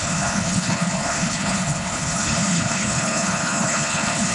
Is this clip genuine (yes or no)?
no